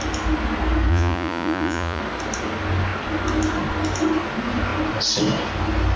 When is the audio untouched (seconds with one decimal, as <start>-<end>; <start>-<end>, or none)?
0.0-0.9; 2.0-6.0